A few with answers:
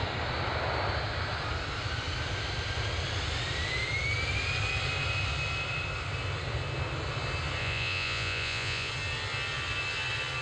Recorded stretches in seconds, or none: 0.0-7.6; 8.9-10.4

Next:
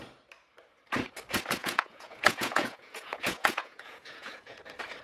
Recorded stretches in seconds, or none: 0.0-1.6; 4.6-5.0

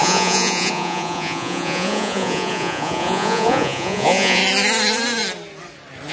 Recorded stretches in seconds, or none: 4.4-6.1

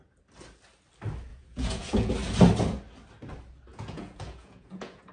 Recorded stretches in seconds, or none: 0.0-1.3; 2.1-3.7

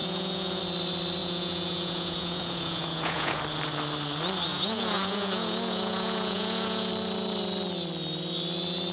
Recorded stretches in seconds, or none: 0.6-1.2; 3.4-4.5; 6.9-8.9